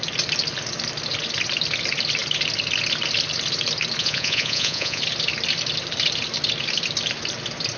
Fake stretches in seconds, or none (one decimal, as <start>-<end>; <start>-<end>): 4.0-5.0